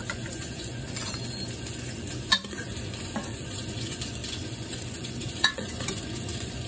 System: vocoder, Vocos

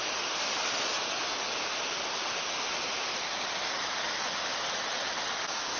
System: none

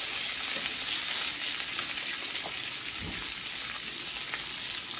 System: none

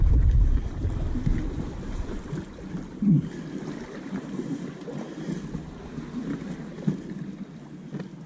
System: none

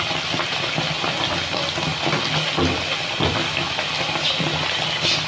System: none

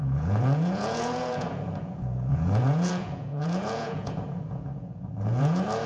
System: vocoder, Vocos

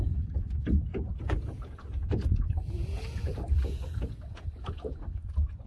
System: vocoder, Vocos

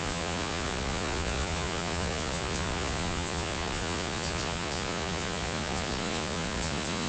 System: vocoder, Vocos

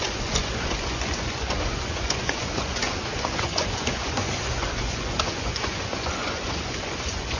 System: vocoder, Vocos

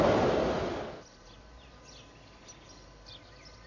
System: none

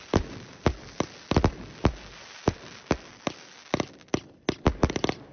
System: none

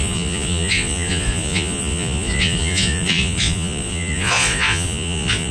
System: vocoder, Vocos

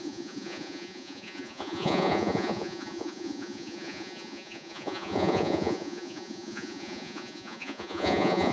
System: vocoder, Vocos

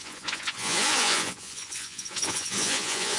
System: vocoder, Vocos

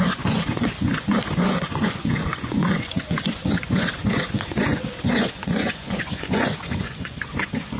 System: vocoder, Vocos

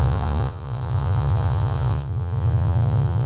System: vocoder, Vocos